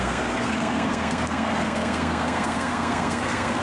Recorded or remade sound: remade